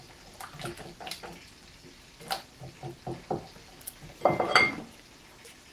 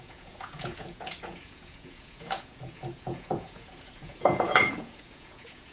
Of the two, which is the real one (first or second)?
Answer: first